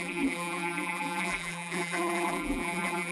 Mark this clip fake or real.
fake